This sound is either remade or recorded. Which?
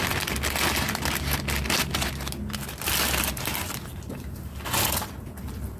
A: recorded